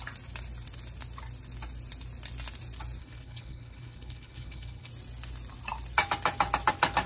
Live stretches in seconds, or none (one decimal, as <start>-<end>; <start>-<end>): 0.0-3.0; 4.9-7.1